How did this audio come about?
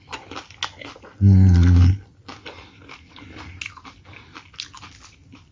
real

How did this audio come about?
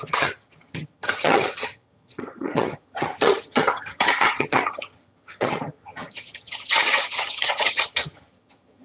fake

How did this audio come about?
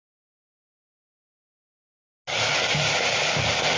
real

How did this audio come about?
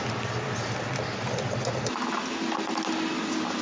real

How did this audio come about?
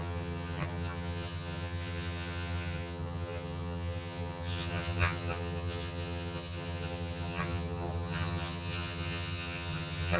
fake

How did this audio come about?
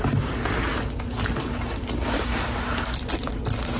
real